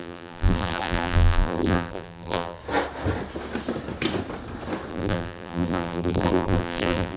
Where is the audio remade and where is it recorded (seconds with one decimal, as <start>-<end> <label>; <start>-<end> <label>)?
0.0-2.6 remade; 2.6-4.9 recorded; 4.9-7.2 remade